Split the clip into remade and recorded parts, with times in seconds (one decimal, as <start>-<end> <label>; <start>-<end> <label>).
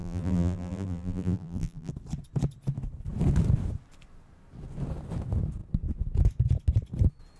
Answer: 0.0-1.9 remade; 1.9-7.4 recorded